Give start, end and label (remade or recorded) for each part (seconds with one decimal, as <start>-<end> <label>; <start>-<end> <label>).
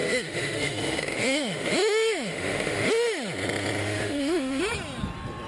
0.0-2.9 remade; 2.9-3.8 recorded; 3.8-4.6 remade; 4.6-5.5 recorded